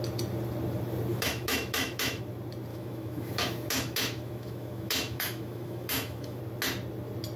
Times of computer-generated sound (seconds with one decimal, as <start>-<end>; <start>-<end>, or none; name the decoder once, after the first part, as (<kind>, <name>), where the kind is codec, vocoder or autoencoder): 1.1-2.2 (autoencoder, DAC-VAE); 2.7-6.4